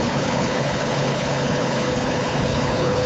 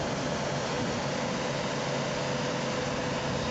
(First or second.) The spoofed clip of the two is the first